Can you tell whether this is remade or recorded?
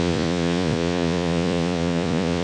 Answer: remade